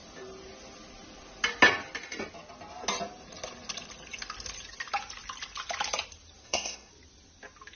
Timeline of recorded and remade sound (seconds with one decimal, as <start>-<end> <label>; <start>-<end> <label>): 0.0-6.4 recorded; 6.4-6.9 remade; 6.9-7.8 recorded